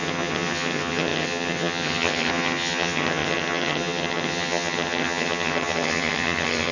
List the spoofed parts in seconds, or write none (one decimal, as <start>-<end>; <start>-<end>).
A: 0.0-6.7